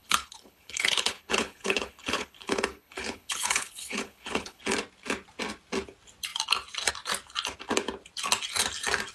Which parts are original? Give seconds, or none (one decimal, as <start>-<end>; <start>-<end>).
4.6-9.1